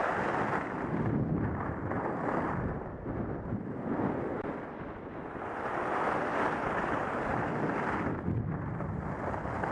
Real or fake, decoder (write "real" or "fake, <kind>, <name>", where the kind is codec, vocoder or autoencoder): real